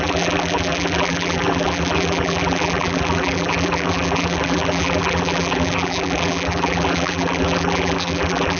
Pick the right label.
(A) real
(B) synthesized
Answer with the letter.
B